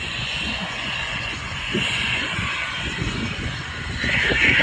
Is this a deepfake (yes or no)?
yes